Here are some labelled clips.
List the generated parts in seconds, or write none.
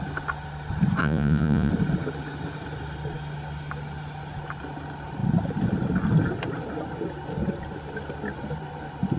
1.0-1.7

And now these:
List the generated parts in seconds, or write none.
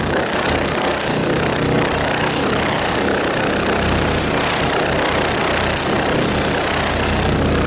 0.0-3.1; 6.9-7.7